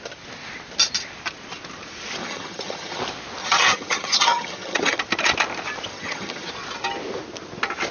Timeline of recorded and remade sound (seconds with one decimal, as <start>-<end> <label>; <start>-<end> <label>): 0.0-2.2 recorded; 2.2-3.0 remade; 3.0-3.4 recorded; 3.4-5.0 remade; 5.0-5.9 recorded; 5.9-6.5 remade; 6.5-7.9 recorded